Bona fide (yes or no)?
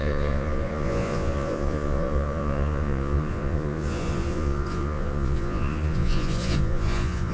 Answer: no